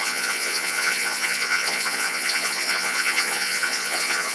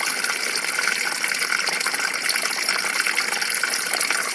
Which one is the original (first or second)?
second